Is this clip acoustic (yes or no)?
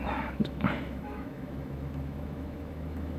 no